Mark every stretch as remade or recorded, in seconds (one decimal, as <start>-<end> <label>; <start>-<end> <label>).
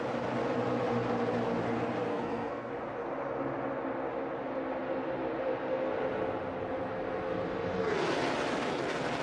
0.0-2.1 recorded; 2.1-2.7 remade; 2.7-9.2 recorded